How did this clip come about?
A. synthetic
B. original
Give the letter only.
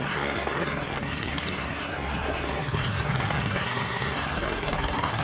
A